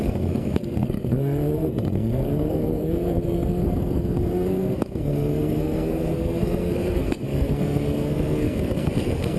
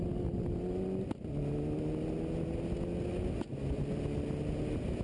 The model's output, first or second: first